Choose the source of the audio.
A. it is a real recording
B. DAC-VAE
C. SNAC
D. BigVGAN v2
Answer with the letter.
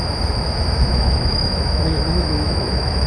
B